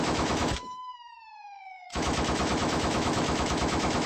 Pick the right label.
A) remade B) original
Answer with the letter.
A